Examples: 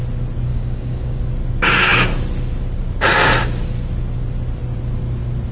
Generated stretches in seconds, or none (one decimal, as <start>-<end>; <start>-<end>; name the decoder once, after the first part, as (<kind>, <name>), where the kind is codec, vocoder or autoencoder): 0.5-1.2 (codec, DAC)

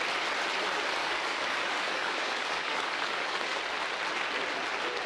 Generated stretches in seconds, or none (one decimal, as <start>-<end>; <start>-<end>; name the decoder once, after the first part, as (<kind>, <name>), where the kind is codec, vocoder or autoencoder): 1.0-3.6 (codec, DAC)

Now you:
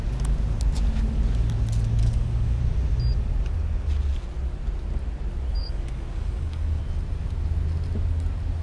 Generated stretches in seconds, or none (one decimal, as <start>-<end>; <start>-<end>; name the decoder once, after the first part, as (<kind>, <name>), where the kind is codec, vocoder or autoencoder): 2.0-2.6 (codec, DAC); 5.6-6.8

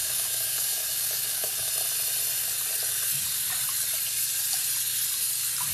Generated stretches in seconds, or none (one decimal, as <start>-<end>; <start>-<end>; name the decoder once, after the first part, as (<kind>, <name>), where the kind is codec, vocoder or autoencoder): 0.0-1.7 (codec, DAC)

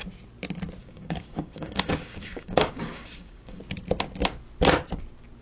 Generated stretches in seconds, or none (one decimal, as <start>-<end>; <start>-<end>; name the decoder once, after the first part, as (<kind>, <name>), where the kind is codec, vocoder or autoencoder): 0.8-3.6 (codec, DAC)

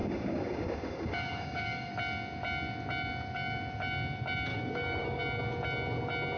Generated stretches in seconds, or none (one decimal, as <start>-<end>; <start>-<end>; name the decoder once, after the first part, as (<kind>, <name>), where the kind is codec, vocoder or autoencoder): 0.0-1.9 (codec, DAC); 4.5-5.2

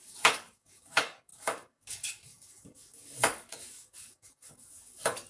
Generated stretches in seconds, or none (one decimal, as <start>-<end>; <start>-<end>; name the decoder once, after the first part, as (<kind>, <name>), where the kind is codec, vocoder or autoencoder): 0.0-5.3 (codec, DAC)